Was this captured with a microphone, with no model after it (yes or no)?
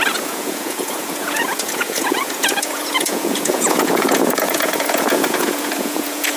no